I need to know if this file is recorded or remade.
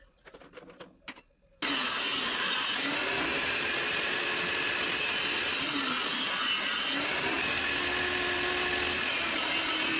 recorded